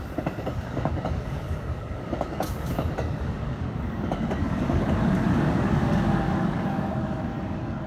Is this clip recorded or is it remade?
remade